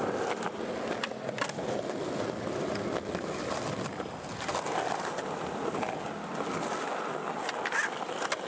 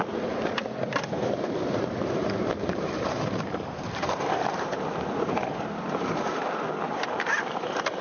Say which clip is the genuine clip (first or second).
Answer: first